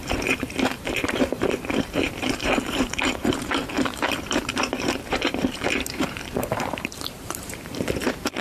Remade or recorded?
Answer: remade